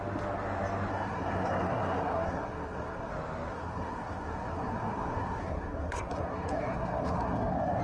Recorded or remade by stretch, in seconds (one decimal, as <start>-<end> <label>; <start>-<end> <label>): 0.0-0.9 recorded; 0.9-3.1 remade; 3.1-3.5 recorded; 3.5-7.8 remade